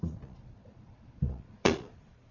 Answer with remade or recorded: remade